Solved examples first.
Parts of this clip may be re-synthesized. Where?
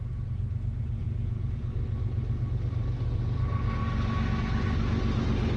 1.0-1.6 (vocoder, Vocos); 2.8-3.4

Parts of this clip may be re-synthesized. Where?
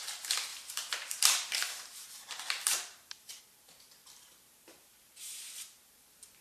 0.5-3.4 (vocoder, BigVGAN v2); 4.0-5.8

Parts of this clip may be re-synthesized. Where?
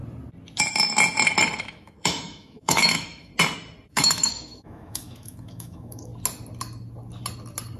1.6-3.3 (autoencoder, DAC-VAE); 3.9-6.1